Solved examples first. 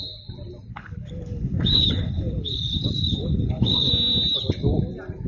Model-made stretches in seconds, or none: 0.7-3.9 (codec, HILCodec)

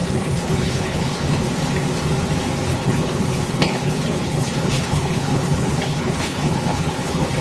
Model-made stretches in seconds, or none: 0.0-1.5 (codec, HILCodec); 2.7-7.4

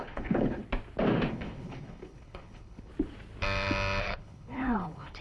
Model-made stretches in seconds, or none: 0.0-0.6 (codec, HILCodec); 1.3-2.9; 4.0-5.2

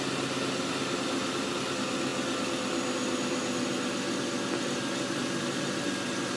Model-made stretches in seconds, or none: none

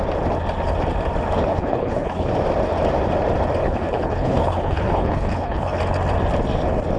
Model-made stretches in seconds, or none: 1.5-2.3 (codec, HILCodec); 3.6-5.8

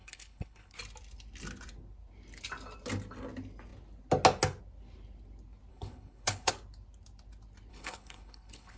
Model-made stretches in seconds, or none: 0.0-0.8 (codec, HILCodec); 5.7-6.5; 7.7-8.8

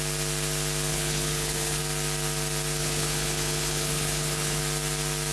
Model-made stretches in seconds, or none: 0.9-1.8 (codec, HILCodec); 2.8-4.6